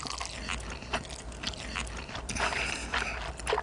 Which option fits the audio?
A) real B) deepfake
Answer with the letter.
A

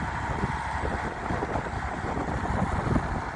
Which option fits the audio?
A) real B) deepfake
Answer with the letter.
A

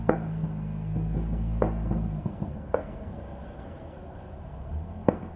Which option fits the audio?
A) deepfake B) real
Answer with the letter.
A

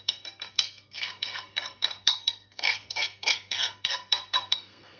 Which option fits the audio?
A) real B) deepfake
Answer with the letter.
B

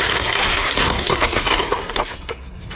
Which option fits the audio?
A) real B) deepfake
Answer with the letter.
B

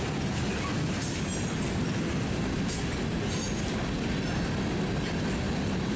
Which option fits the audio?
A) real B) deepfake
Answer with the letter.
A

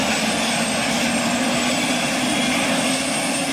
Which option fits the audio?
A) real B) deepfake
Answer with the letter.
A